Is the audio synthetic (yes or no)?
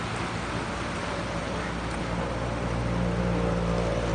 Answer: no